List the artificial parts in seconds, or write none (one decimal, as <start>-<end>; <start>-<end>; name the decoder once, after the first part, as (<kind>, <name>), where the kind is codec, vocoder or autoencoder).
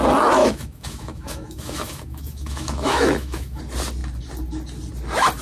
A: 0.4-3.6 (autoencoder, DAC-VAE)